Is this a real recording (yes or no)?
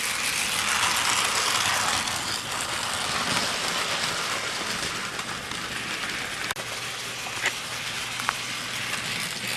yes